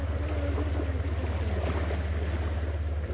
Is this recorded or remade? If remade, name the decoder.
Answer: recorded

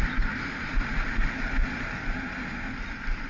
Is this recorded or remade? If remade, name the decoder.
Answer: recorded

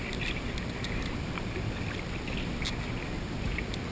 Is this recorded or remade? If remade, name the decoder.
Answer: recorded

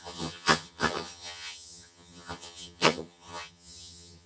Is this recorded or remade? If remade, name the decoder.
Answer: remade, vocoder, HiFi-GAN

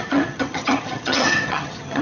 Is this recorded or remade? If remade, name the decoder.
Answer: remade, vocoder, HiFi-GAN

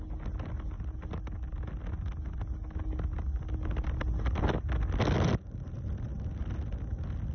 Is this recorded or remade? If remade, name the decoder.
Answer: recorded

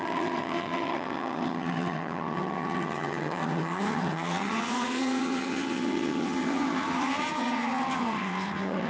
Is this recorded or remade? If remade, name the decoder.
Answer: remade, vocoder, HiFi-GAN